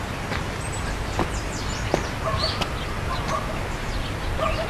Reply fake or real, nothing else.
real